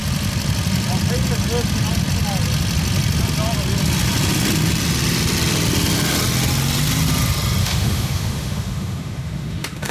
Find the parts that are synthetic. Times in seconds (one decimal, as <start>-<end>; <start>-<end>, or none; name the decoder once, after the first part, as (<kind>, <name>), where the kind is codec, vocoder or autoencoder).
7.6-9.9 (autoencoder, DAC-VAE)

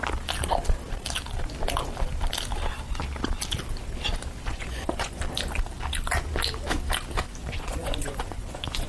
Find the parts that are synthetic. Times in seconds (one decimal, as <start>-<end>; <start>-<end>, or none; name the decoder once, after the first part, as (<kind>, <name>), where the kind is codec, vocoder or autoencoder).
4.5-5.2 (vocoder, Vocos); 7.4-8.9